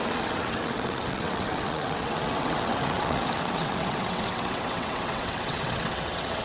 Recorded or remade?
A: remade